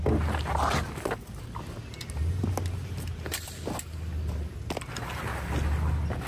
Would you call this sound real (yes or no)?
yes